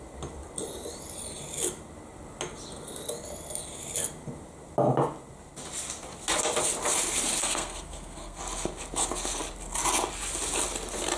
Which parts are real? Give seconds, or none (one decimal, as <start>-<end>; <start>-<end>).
0.0-7.4; 8.4-11.2